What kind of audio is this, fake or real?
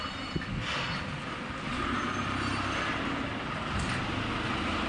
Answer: real